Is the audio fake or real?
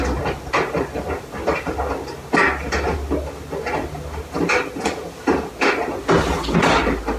real